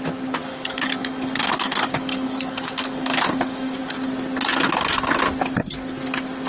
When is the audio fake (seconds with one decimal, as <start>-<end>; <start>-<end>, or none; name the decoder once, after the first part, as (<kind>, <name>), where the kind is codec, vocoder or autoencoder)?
0.4-3.8 (codec, DAC)